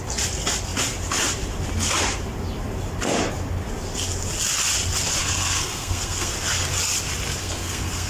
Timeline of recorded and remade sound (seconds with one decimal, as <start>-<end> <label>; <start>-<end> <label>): 0.0-5.2 recorded; 5.2-6.3 remade; 6.3-7.4 recorded; 7.4-8.1 remade